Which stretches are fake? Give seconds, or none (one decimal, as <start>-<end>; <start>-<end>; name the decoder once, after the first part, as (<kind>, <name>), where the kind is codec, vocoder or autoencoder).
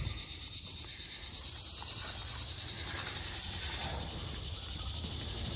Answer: none